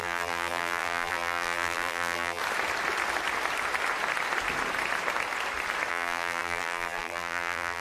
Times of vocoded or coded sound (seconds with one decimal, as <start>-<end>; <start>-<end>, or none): 0.0-2.4; 5.9-7.8